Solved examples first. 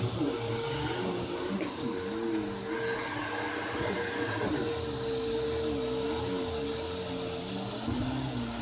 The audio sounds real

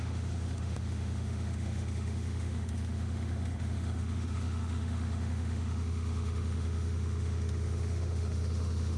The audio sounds fake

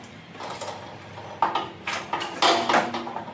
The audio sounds real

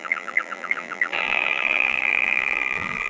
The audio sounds fake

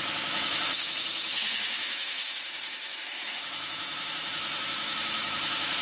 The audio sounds fake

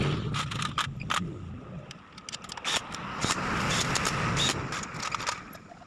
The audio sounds real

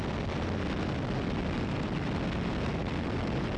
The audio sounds real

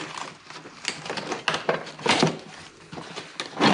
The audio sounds real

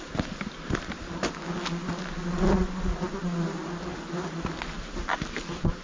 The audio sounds real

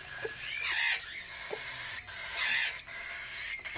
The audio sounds real